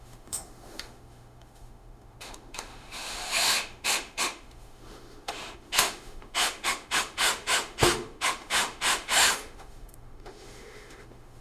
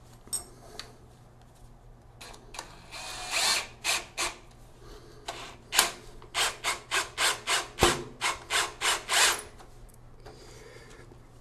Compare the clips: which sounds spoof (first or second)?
first